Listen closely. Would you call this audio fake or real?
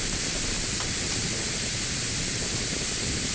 real